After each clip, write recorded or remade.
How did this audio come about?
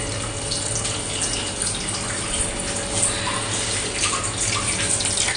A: recorded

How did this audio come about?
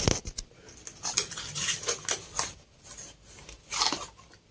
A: recorded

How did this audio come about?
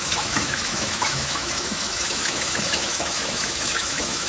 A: remade